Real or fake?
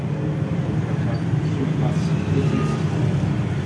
real